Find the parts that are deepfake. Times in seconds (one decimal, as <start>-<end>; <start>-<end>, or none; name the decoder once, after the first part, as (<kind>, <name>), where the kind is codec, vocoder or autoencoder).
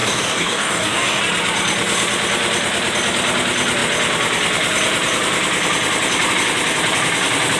0.0-1.2 (codec, DAC)